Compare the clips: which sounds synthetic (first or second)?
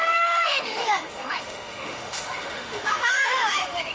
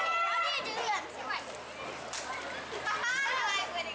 first